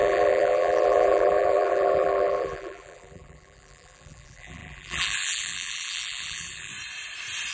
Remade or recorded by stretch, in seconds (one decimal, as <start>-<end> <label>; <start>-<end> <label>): 0.0-6.7 remade; 6.7-7.5 recorded